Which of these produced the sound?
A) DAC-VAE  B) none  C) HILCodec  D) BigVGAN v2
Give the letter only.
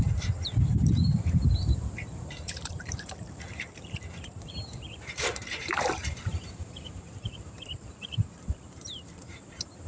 D